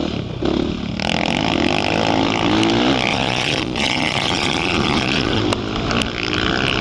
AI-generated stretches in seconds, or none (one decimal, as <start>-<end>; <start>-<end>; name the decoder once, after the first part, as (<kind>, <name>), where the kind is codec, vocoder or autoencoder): 3.1-5.4 (vocoder, Vocos)